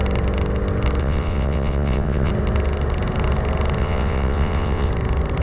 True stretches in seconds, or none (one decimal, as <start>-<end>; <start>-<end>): 0.0-1.0; 2.3-3.8; 4.9-5.4

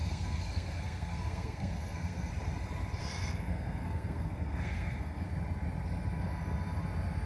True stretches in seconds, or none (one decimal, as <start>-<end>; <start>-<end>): 2.3-3.0; 5.3-7.3

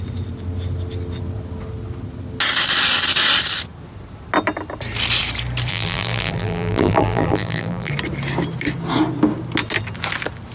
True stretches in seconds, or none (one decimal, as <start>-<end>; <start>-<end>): 0.0-5.7; 7.9-10.5